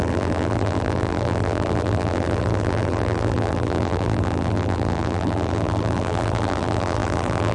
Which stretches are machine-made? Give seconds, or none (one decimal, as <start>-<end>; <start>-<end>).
0.0-7.5